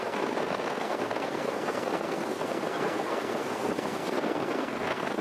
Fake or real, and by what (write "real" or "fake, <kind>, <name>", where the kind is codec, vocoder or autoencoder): fake, codec, SNAC